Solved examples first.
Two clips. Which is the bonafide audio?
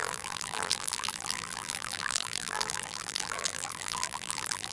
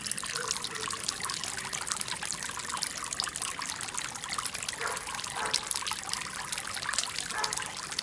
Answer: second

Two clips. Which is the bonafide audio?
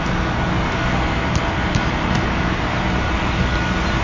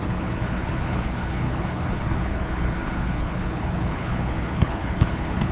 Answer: first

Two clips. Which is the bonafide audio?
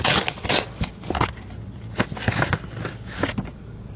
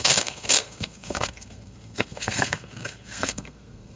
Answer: first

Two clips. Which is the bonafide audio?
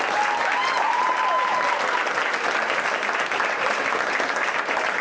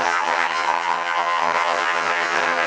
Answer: first